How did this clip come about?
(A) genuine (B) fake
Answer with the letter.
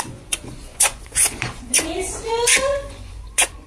B